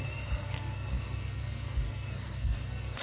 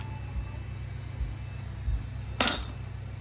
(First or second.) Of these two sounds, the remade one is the first